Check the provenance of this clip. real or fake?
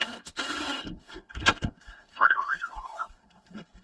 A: fake